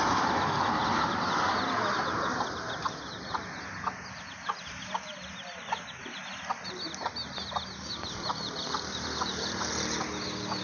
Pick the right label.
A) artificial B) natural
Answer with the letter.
B